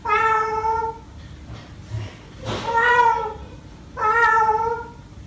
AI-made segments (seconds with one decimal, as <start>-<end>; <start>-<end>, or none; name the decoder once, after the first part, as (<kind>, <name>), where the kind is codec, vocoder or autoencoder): none